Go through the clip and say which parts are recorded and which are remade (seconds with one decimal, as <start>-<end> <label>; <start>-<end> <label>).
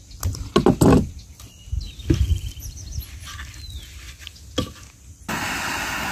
0.0-6.1 recorded